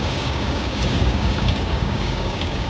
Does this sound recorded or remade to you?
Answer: remade